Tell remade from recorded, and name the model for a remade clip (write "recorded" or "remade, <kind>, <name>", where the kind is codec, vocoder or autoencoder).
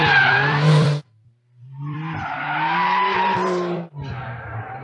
remade, vocoder, BigVGAN v2